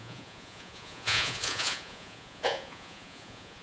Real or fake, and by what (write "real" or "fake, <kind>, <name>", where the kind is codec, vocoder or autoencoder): fake, vocoder, Vocos